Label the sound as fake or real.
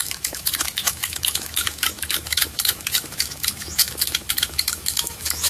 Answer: fake